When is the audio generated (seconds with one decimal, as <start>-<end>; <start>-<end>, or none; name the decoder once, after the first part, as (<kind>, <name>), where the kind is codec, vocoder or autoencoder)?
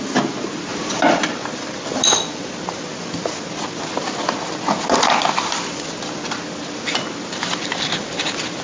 0.7-3.3 (vocoder, BigVGAN v2)